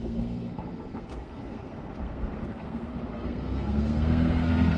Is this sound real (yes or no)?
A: no